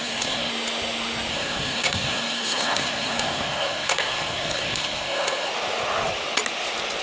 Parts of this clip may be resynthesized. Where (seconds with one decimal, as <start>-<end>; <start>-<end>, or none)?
0.0-0.5; 1.3-5.5